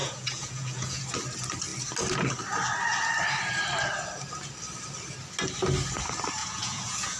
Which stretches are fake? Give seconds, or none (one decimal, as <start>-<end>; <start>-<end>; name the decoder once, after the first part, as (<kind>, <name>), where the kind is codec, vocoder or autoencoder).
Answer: 0.0-1.0 (vocoder, Vocos); 6.4-7.2